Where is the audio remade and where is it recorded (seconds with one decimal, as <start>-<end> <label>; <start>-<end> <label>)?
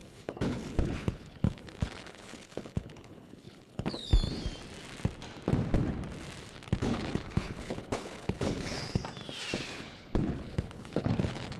0.0-4.1 remade; 4.1-6.8 recorded; 6.8-9.0 remade; 9.0-9.6 recorded; 9.6-11.6 remade